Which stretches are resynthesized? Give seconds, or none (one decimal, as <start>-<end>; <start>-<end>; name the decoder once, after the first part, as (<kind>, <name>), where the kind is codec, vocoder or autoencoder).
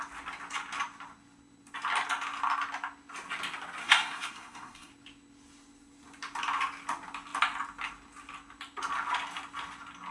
3.8-4.9 (codec, SNAC)